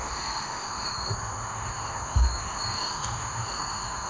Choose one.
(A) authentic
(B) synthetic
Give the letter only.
B